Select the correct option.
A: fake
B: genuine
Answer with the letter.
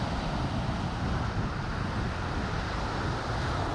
B